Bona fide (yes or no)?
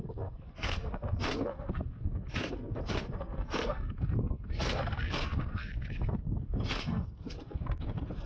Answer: no